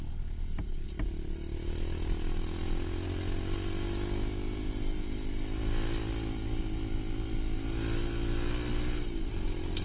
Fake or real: real